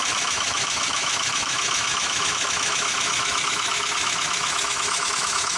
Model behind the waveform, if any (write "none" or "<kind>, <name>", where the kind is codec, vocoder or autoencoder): autoencoder, DAC-VAE